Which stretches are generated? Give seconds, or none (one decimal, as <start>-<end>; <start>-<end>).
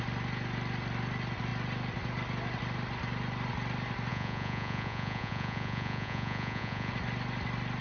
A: 4.1-6.9